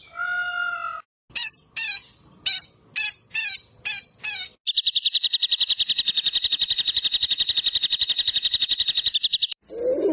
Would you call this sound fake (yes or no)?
no